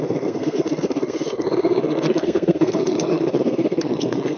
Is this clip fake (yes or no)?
yes